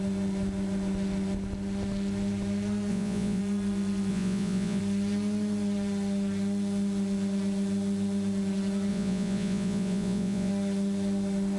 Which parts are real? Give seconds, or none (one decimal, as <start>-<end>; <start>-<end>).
0.0-2.9; 3.4-4.1; 4.8-8.9; 10.5-11.6